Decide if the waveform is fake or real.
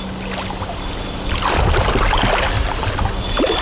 real